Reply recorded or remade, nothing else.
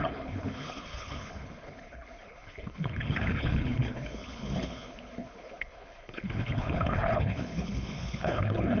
remade